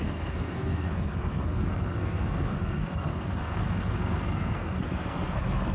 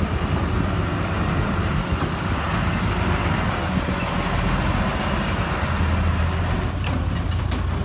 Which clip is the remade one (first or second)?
first